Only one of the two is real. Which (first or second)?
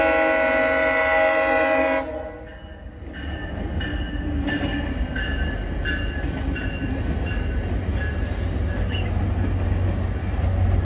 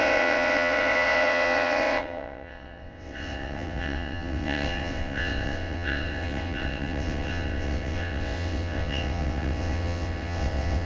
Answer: first